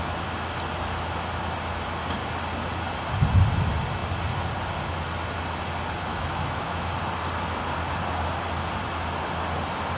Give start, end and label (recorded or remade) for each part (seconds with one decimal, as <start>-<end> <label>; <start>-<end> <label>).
0.0-6.1 recorded; 6.1-6.9 remade; 6.9-10.0 recorded